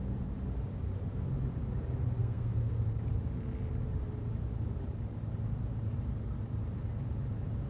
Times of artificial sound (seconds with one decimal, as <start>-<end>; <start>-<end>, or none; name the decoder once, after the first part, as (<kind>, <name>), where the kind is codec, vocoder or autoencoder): 2.2-2.8 (codec, SNAC)